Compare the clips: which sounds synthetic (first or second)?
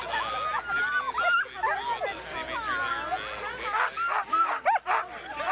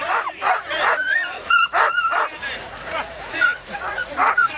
second